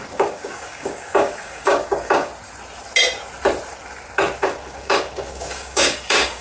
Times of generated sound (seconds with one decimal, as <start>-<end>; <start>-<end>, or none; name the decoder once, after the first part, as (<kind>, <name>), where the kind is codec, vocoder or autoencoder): 0.0-2.3 (codec, DAC); 4.4-6.4